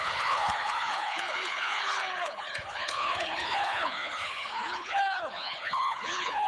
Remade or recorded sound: remade